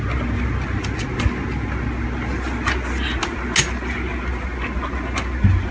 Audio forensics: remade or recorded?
recorded